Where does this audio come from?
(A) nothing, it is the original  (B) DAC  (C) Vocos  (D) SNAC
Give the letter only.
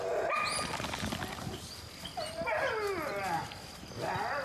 A